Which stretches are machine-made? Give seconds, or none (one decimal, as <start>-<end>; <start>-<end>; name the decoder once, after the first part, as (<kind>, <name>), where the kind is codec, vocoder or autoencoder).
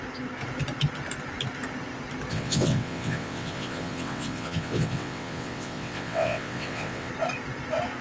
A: 2.3-7.1 (vocoder, WaveNeXt)